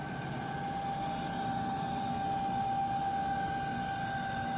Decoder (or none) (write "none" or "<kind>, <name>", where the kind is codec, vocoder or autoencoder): none